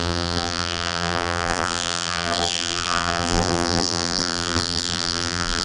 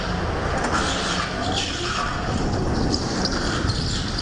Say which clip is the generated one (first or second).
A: first